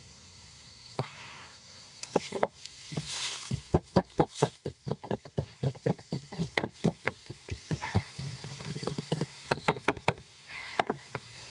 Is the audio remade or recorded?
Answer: remade